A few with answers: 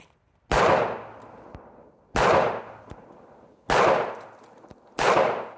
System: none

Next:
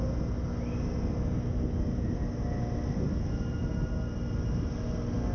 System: none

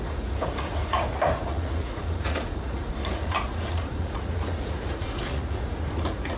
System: vocoder, Vocos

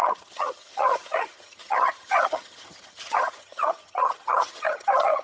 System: vocoder, HiFi-GAN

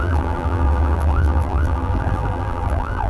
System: vocoder, BigVGAN v2